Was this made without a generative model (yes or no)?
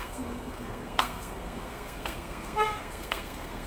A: no